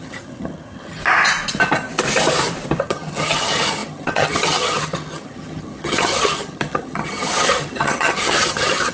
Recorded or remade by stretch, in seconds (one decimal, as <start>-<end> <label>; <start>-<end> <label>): 0.0-1.0 remade; 1.0-2.8 recorded; 2.8-8.9 remade